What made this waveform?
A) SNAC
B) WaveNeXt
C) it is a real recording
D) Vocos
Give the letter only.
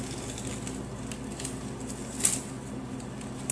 C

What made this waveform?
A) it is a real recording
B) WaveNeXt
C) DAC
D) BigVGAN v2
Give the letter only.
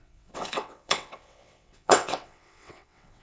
B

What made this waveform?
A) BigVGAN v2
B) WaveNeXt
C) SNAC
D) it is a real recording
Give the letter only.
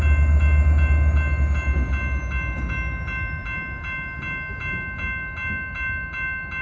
D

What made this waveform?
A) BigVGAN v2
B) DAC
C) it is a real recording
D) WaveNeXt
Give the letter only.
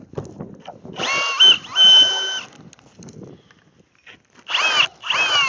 C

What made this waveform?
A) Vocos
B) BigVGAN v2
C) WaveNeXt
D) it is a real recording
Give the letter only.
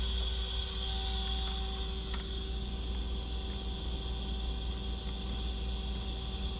D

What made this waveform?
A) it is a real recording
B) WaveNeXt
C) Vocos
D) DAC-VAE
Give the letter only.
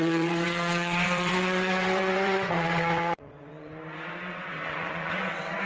B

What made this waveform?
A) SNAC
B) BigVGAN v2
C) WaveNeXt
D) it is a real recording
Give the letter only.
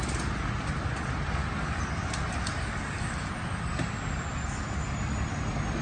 D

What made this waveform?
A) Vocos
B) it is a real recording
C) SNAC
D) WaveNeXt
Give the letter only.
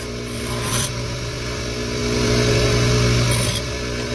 B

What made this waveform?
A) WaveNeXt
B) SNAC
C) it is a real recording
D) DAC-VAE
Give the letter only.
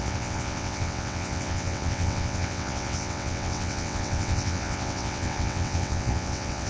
A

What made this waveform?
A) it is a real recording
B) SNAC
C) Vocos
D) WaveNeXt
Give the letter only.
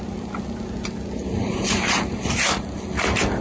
A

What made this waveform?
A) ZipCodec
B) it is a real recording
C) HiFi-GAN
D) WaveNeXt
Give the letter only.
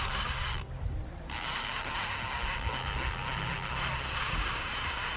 B